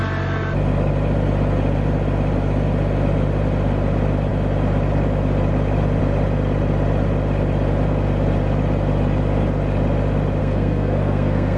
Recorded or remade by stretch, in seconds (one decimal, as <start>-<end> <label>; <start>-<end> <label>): 0.0-10.4 recorded; 10.4-11.6 remade